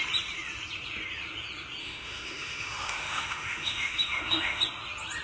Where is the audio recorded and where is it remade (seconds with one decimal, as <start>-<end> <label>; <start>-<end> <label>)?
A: 0.0-1.8 recorded; 1.8-4.6 remade; 4.6-5.2 recorded